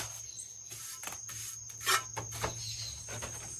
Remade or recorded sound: recorded